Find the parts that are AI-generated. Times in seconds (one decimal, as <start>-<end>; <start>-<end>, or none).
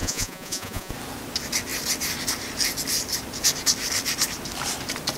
0.0-0.9